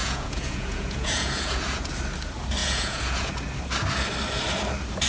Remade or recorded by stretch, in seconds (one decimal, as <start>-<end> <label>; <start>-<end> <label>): 0.0-1.9 remade; 1.9-2.6 recorded; 2.6-3.3 remade; 3.3-5.1 recorded